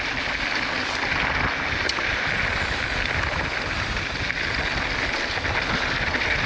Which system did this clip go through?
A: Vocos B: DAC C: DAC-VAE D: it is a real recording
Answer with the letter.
D